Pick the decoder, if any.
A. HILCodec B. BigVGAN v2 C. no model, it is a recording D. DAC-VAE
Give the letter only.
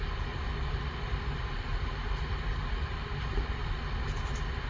C